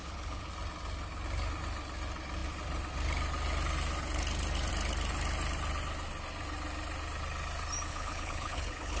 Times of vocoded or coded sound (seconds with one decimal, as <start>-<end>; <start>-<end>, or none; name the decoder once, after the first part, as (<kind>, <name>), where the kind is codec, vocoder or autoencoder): 0.0-0.5 (codec, HILCodec); 7.9-9.0